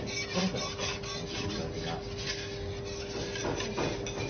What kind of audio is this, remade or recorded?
recorded